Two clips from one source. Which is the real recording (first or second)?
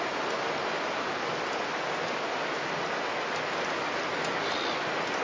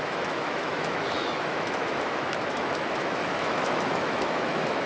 first